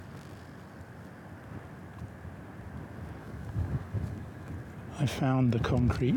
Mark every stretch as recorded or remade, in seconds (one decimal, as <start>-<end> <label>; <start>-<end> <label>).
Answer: 0.0-3.2 recorded; 3.2-4.5 remade; 4.5-6.2 recorded